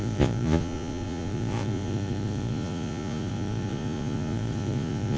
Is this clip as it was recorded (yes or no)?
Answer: no